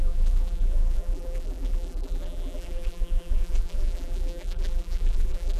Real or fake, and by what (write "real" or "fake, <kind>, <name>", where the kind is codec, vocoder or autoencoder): fake, vocoder, BigVGAN v2